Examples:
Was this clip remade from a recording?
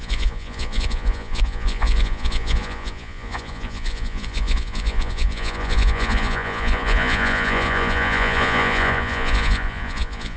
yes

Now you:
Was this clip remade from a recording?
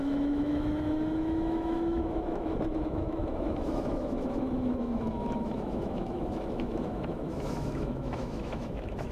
yes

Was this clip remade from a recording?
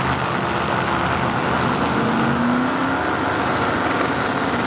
no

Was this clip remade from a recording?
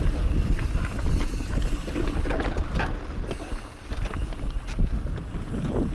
no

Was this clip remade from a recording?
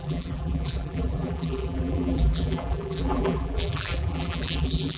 yes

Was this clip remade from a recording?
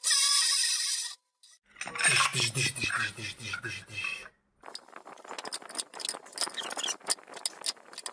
no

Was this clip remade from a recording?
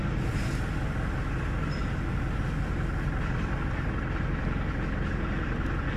no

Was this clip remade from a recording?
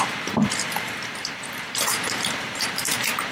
yes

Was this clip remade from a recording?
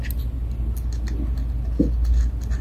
no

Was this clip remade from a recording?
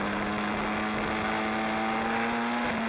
no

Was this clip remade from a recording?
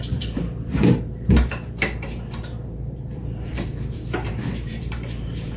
yes